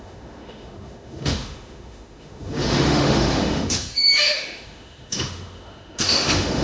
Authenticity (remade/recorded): remade